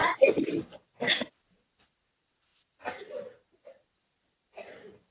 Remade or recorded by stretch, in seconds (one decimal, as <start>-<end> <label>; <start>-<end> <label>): 0.0-0.5 recorded; 0.5-1.0 remade; 1.0-1.5 recorded; 1.5-5.1 remade